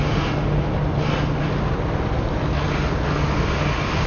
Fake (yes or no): no